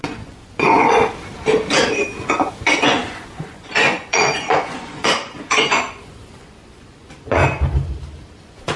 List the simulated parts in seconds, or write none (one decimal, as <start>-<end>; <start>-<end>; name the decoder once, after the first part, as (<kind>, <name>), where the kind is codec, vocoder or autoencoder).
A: 0.0-1.0 (vocoder, Vocos); 2.1-7.4; 8.4-8.8